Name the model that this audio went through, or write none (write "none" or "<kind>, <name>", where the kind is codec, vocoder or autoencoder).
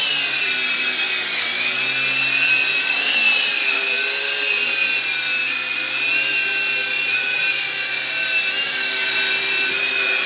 none